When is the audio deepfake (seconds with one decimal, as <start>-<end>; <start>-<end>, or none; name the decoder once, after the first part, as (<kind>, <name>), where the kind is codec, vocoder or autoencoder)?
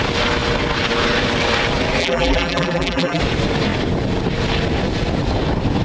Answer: 2.0-3.2 (vocoder, BigVGAN v2)